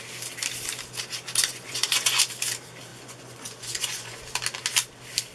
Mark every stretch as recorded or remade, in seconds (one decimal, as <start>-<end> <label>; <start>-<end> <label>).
0.0-1.5 recorded; 1.5-2.2 remade; 2.2-2.9 recorded; 2.9-4.2 remade; 4.2-5.3 recorded